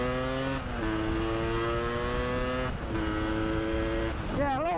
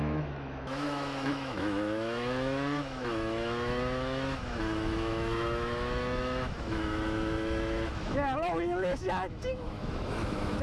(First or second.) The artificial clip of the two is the second